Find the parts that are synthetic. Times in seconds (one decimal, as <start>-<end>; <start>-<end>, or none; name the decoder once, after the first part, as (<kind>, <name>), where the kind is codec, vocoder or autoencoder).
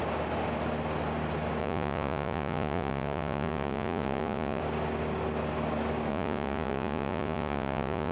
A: 1.6-4.6 (vocoder, Vocos); 6.1-8.1